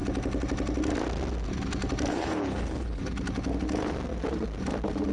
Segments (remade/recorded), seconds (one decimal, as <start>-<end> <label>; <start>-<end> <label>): 0.0-2.1 recorded; 2.1-3.0 remade; 3.0-5.1 recorded